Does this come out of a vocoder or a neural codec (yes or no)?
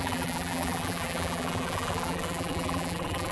yes